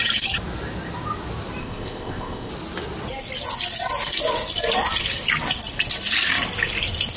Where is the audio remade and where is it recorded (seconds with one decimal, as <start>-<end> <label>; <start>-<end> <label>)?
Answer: 0.0-1.6 recorded; 1.6-2.5 remade; 2.5-7.2 recorded